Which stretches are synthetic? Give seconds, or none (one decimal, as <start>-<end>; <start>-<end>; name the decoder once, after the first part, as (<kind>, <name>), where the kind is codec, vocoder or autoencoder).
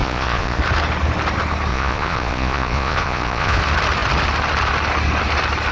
0.0-0.6 (vocoder, Vocos); 1.7-3.6